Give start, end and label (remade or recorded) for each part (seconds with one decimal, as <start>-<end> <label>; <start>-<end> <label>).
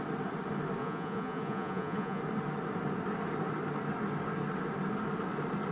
0.0-0.8 recorded; 0.8-2.2 remade; 2.2-5.7 recorded